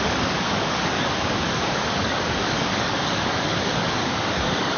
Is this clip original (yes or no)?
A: no